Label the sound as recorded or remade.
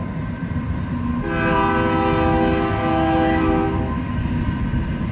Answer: recorded